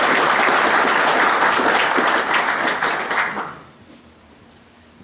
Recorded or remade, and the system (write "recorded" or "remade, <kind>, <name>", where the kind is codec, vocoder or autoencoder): recorded